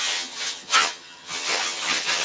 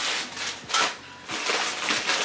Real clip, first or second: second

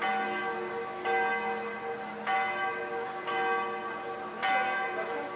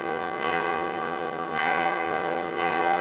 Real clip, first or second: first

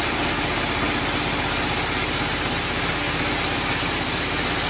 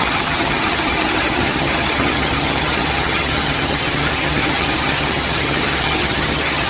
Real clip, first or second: first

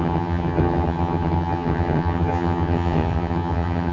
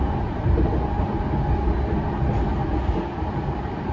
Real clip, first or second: second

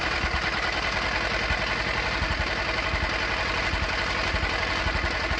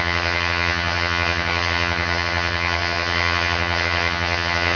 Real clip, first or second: first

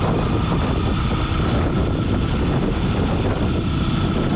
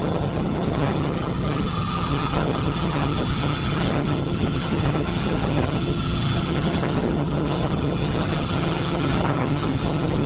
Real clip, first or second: first